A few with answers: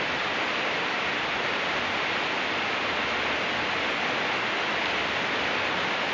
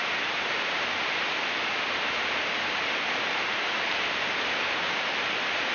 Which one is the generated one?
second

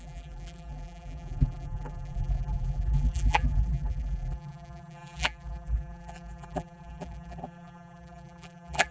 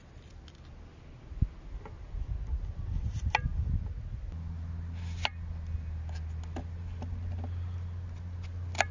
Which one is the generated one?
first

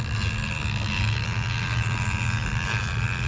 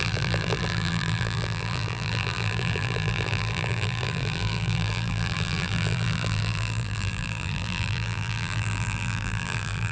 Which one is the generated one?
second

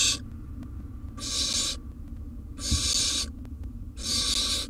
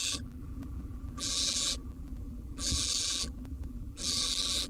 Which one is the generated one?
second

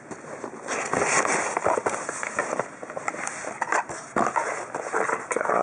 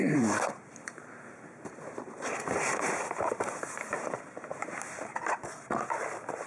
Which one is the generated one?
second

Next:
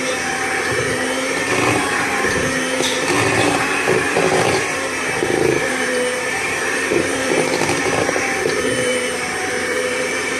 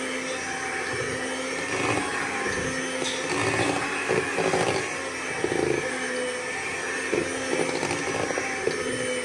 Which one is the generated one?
first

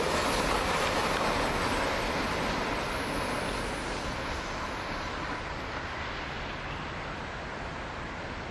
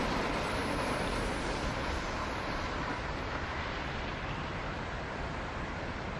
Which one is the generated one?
second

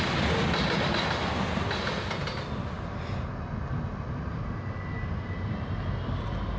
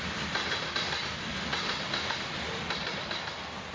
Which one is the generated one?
second